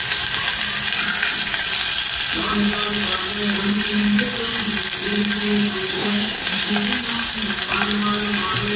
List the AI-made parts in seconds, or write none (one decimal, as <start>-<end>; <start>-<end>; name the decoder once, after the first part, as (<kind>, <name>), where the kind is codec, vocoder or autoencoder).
5.9-6.7 (codec, SNAC)